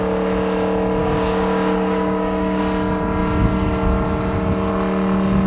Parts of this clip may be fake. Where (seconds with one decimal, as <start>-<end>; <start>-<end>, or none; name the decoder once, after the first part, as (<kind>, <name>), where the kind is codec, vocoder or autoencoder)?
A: 1.0-2.6 (codec, DAC)